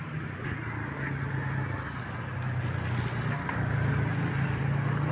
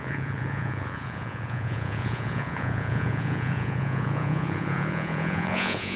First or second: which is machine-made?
second